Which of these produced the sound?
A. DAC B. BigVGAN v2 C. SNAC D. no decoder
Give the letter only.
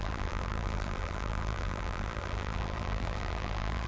B